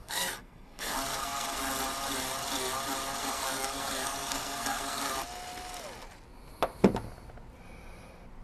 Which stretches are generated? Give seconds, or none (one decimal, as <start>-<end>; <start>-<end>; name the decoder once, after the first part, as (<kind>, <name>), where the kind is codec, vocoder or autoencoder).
0.0-1.6 (codec, SNAC); 3.2-5.1